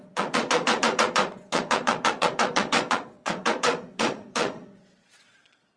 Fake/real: fake